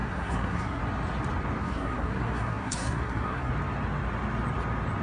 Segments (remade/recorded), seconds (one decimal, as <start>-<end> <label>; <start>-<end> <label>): 0.0-0.8 remade; 0.8-1.6 recorded; 1.6-3.5 remade; 3.5-5.0 recorded